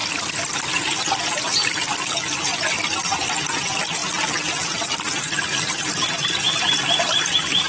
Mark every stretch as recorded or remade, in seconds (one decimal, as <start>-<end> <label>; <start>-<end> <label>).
0.0-1.2 recorded; 1.2-2.5 remade; 2.5-3.0 recorded; 3.0-7.7 remade